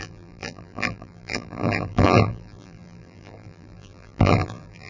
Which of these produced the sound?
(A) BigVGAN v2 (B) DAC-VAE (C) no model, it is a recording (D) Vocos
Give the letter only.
A